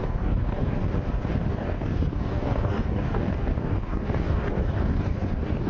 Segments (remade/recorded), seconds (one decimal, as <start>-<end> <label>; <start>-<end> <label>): 0.0-0.8 remade; 0.8-1.5 recorded; 1.5-5.7 remade